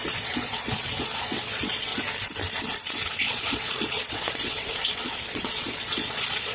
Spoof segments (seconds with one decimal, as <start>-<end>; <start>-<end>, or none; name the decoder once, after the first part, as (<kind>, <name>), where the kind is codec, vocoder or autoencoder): 0.0-1.9 (vocoder, Vocos); 3.2-6.5